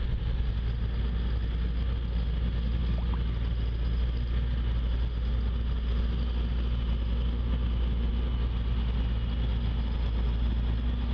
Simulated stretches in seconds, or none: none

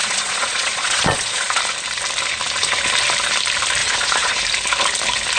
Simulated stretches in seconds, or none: 0.0-1.6 (vocoder, Vocos); 3.8-4.4